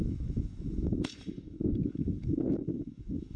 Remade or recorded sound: remade